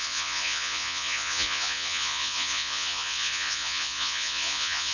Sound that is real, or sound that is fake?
fake